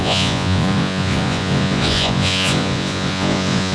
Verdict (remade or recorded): remade